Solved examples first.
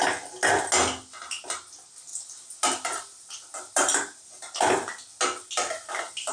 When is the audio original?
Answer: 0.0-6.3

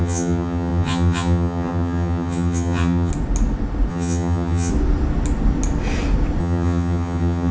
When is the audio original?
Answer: 3.1-3.9; 4.7-6.4

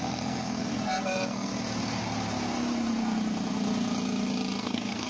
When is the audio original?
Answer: 1.5-4.6

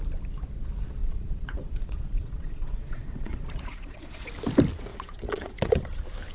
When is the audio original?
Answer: 0.0-1.0; 4.3-4.9; 5.8-6.3

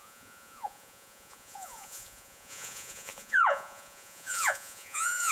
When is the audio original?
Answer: none